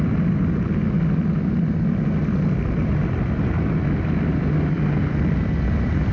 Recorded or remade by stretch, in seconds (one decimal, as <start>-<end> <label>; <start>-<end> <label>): 0.0-2.2 recorded; 2.2-6.1 remade

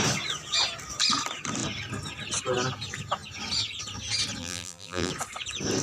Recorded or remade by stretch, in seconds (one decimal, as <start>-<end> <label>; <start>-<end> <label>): 0.0-4.4 recorded; 4.4-5.1 remade; 5.1-5.8 recorded

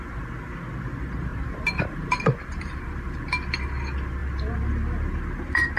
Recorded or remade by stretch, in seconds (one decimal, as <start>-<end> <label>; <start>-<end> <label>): 0.0-1.3 recorded; 1.3-3.1 remade; 3.1-5.8 recorded

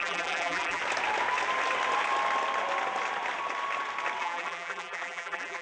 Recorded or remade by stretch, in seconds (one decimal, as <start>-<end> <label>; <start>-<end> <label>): 0.0-0.8 remade; 0.8-4.2 recorded; 4.2-5.6 remade